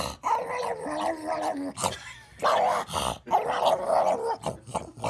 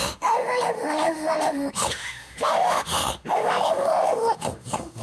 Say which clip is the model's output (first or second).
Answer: second